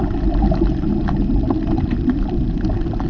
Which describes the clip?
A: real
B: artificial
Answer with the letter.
A